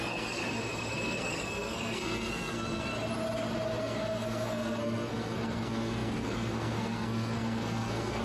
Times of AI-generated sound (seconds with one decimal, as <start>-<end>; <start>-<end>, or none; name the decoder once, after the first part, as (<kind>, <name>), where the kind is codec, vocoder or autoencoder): 0.0-0.4 (codec, SNAC); 0.9-2.9; 3.8-8.2